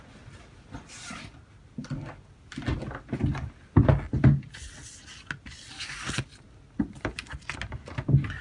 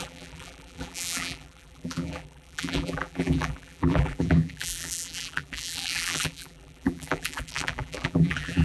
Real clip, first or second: first